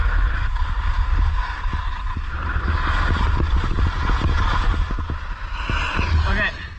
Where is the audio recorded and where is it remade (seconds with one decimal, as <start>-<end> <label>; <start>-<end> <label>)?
0.0-6.8 recorded